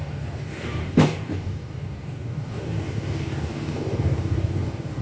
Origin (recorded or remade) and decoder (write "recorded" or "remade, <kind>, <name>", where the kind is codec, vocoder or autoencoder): remade, codec, DAC